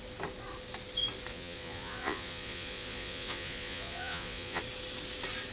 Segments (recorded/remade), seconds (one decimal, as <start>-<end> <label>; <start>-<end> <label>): 0.0-1.3 recorded; 1.3-4.6 remade; 4.6-5.5 recorded